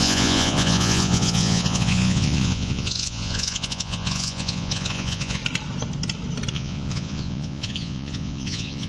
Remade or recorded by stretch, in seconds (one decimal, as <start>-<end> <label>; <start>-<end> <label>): 0.0-5.4 remade; 5.4-6.5 recorded; 6.5-8.9 remade